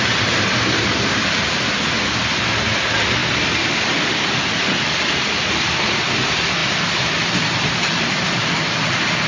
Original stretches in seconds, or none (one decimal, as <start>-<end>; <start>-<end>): 0.0-3.2; 4.6-9.3